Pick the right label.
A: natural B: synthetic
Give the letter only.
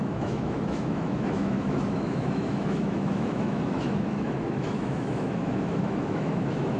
B